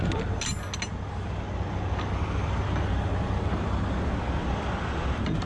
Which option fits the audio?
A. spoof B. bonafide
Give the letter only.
B